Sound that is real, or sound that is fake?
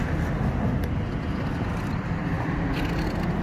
real